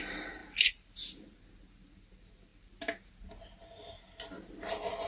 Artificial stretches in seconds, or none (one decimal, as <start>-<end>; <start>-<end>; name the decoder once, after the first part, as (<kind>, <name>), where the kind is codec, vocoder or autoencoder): none